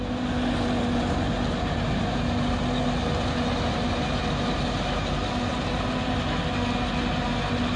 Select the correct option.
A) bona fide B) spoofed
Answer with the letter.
A